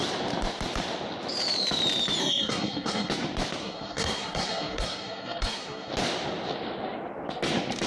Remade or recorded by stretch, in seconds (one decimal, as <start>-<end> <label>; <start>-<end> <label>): 0.0-2.2 recorded; 2.2-3.1 remade; 3.1-3.6 recorded; 3.6-5.9 remade; 5.9-7.9 recorded